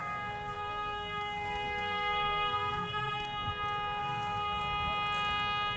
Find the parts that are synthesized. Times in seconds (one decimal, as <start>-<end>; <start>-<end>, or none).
0.0-3.5; 4.0-4.6